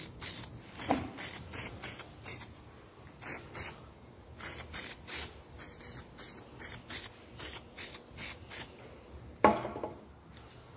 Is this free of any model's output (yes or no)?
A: yes